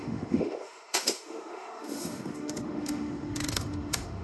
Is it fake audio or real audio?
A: fake